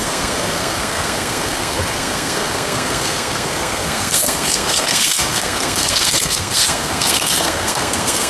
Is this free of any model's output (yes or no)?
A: no